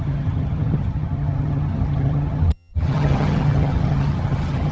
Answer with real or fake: fake